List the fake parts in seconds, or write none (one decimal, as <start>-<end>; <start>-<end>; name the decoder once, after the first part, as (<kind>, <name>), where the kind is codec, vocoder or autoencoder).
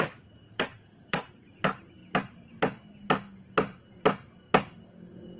0.0-2.0 (vocoder, BigVGAN v2)